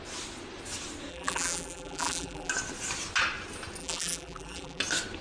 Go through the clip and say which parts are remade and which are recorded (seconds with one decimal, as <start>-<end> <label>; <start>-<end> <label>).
0.0-1.1 recorded; 1.1-2.5 remade; 2.5-3.8 recorded; 3.8-4.8 remade; 4.8-5.2 recorded